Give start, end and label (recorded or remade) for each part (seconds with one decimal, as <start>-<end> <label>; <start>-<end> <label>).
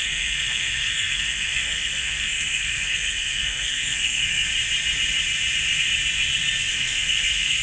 0.0-4.5 remade; 4.5-6.7 recorded; 6.7-7.6 remade